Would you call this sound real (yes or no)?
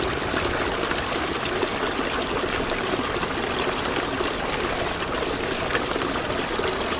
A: yes